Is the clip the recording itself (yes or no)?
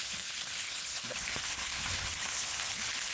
no